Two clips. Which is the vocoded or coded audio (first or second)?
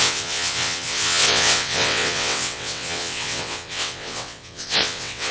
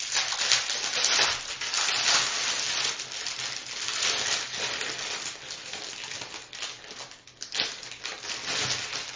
first